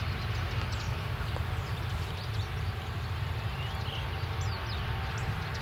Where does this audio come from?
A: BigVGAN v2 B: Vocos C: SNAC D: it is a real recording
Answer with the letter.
D